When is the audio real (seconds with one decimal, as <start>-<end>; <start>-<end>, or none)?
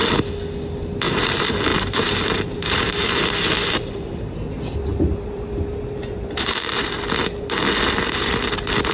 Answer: 0.0-1.7; 2.9-4.9; 6.8-8.9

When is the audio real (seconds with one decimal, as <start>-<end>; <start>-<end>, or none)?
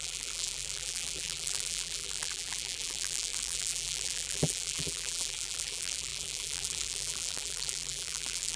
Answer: none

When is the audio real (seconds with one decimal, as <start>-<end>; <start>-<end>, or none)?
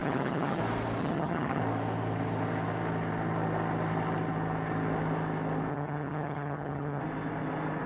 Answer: 0.6-1.0; 1.6-5.7; 7.0-7.9